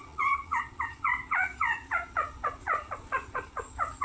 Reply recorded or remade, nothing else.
remade